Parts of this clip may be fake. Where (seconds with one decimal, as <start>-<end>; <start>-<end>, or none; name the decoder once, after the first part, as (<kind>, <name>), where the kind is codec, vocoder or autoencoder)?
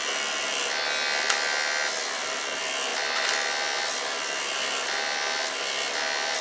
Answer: none